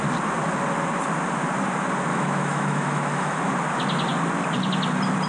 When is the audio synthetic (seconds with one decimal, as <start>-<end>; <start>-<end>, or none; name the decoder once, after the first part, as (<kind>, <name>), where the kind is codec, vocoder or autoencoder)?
2.1-3.4 (autoencoder, DAC-VAE)